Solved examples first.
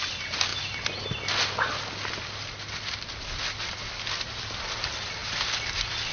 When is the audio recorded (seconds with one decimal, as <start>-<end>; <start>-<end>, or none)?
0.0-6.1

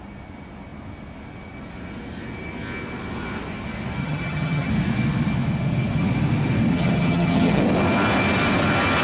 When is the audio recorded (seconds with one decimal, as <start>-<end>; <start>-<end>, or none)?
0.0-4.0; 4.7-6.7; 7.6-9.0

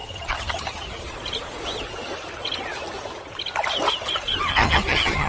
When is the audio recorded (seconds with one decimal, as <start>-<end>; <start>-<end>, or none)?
1.1-4.5